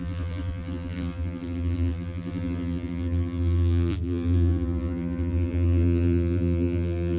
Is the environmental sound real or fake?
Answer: fake